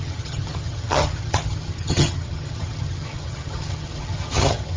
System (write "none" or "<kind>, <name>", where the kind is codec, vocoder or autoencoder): vocoder, HiFi-GAN